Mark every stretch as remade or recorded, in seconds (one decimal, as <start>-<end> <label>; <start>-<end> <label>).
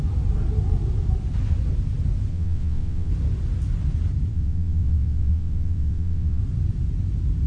0.0-2.3 recorded; 2.3-3.1 remade; 3.1-4.3 recorded; 4.3-6.4 remade; 6.4-7.5 recorded